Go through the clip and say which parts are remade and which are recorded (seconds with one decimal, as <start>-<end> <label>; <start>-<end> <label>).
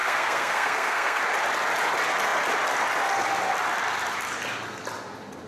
0.0-1.2 remade; 1.2-5.5 recorded